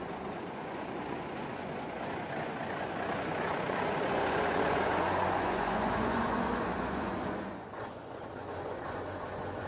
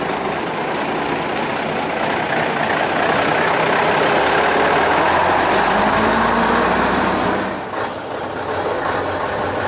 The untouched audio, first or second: second